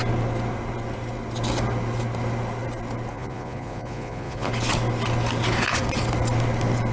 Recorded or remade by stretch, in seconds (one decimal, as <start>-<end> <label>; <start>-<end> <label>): 0.0-3.1 recorded; 3.1-4.5 remade; 4.5-6.9 recorded